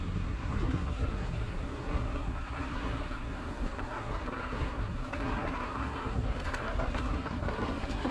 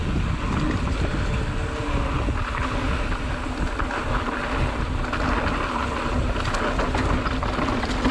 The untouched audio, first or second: second